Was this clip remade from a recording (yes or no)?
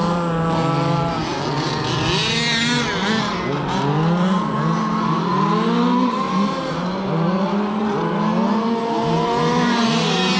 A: no